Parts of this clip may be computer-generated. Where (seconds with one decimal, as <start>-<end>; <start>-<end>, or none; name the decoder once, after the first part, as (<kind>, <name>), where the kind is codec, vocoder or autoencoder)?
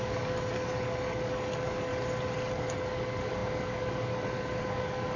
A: 0.0-1.9 (codec, DAC); 2.5-5.2